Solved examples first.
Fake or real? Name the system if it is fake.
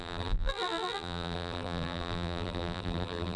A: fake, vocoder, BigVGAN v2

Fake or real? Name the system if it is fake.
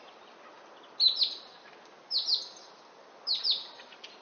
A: real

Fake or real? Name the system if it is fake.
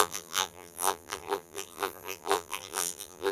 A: fake, vocoder, BigVGAN v2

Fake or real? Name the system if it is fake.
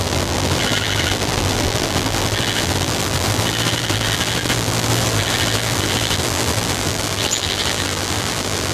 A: fake, vocoder, BigVGAN v2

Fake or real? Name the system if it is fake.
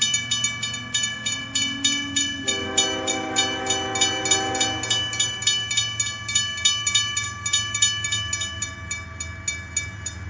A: real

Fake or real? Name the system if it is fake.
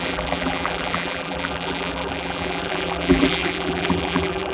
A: fake, vocoder, BigVGAN v2